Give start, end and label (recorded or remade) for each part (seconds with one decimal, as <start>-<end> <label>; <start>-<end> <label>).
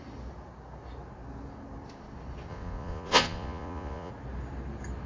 0.0-2.5 recorded; 2.5-4.1 remade; 4.1-5.1 recorded